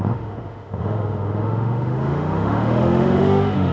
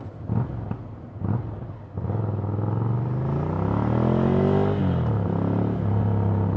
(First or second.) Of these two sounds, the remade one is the first